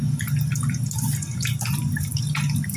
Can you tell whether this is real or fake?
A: real